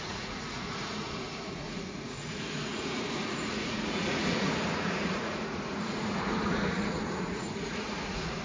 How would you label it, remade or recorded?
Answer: remade